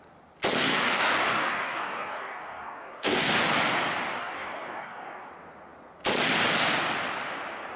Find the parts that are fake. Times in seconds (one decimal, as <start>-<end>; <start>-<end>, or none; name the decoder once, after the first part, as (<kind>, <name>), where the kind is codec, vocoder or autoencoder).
0.7-3.3 (codec, DAC); 4.2-5.3